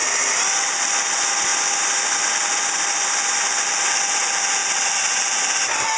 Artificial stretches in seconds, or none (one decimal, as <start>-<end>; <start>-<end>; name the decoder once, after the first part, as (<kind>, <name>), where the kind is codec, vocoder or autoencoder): none